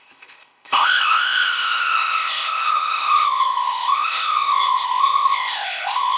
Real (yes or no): no